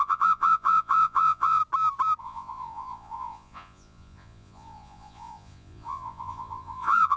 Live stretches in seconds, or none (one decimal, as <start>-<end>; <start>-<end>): 1.6-2.2